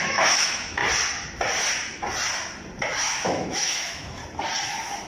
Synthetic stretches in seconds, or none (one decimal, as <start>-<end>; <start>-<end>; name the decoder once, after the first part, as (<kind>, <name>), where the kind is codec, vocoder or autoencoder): 0.0-0.8 (autoencoder, DAC-VAE); 3.0-4.2